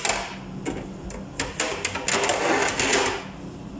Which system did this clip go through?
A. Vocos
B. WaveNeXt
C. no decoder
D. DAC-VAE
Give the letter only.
C